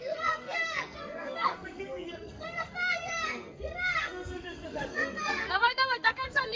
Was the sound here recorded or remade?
remade